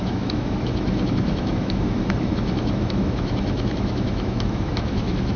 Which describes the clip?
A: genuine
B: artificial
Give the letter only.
B